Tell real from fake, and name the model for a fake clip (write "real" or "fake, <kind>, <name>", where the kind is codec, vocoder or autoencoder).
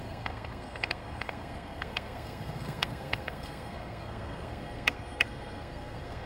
fake, codec, SNAC